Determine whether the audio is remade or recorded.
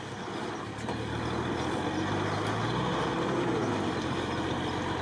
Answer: recorded